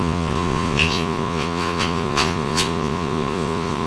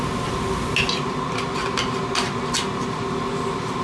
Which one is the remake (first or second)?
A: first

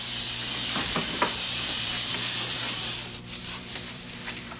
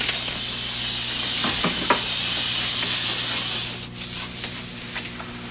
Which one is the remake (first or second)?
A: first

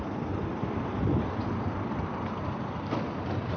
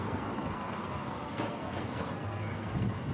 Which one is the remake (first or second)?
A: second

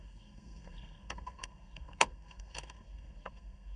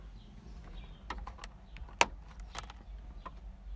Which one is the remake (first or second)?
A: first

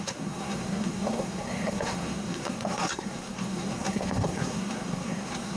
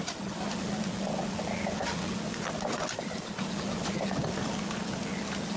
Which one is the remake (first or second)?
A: first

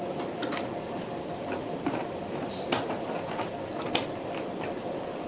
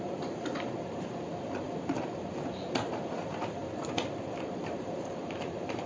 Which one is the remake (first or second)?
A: second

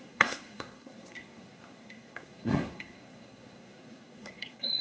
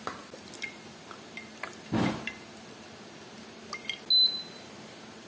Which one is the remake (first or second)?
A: first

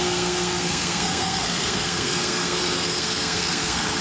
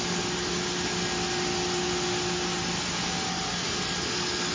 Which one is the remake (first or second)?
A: first